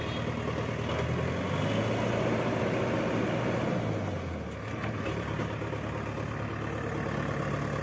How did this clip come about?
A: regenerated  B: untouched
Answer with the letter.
B